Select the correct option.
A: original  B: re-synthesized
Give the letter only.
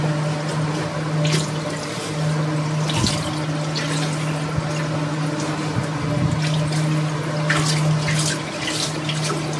A